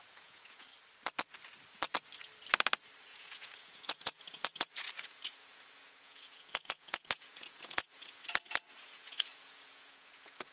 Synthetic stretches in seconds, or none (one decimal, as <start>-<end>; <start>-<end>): 0.0-0.7; 3.0-10.5